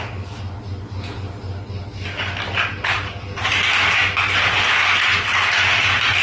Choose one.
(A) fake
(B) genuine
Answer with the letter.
B